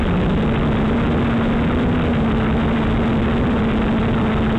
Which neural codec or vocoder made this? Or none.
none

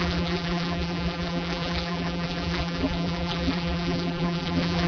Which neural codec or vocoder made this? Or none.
vocoder, BigVGAN v2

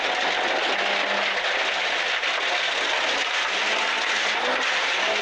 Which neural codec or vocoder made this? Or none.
none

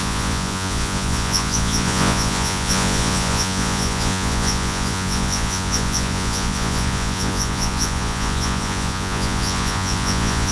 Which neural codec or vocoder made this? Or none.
vocoder, Vocos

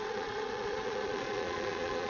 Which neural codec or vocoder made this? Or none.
vocoder, Vocos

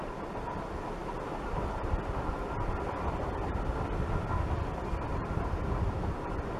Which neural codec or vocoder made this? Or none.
none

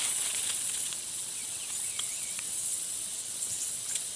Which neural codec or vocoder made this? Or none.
vocoder, WaveNeXt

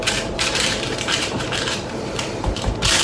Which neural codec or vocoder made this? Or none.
vocoder, BigVGAN v2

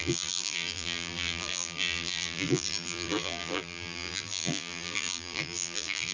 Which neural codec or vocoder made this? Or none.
vocoder, BigVGAN v2